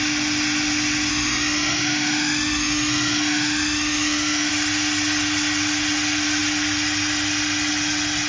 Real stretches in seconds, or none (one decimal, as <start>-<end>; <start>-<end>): 0.0-1.1; 4.5-8.3